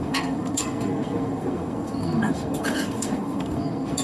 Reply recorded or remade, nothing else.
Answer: remade